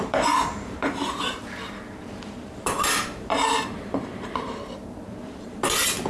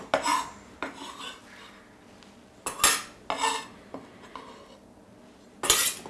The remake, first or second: first